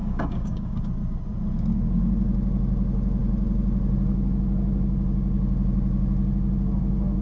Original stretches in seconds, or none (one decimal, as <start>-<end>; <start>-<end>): 0.8-7.2